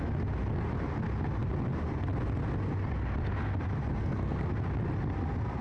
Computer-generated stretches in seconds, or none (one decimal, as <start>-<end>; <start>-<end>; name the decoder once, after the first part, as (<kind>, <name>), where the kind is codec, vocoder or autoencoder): 4.0-4.5 (codec, SNAC)